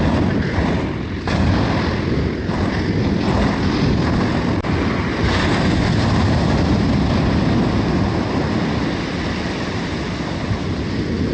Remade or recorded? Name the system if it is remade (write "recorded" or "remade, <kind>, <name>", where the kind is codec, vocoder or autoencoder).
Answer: recorded